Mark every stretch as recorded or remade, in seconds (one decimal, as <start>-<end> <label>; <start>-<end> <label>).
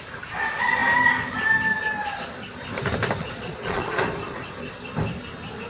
0.0-3.2 recorded; 3.2-4.0 remade; 4.0-5.7 recorded